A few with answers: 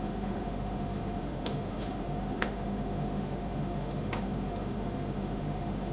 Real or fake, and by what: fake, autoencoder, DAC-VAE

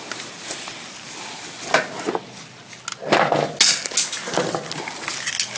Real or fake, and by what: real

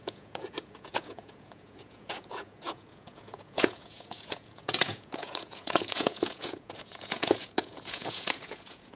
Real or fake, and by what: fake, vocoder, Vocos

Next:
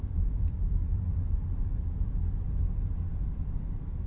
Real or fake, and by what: fake, vocoder, BigVGAN v2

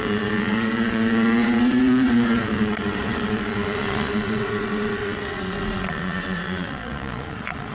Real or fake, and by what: fake, vocoder, Vocos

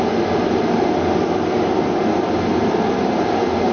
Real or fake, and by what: real